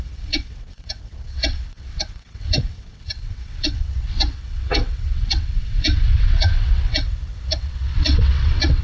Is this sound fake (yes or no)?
yes